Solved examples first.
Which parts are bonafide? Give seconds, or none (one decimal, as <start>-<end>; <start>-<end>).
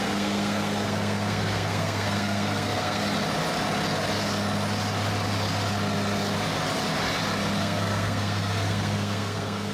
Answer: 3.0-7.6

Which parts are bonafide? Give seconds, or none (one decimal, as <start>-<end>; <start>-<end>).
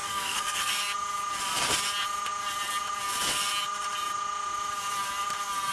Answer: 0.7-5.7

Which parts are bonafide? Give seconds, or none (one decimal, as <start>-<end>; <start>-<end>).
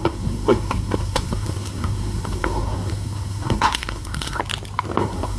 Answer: 4.4-5.0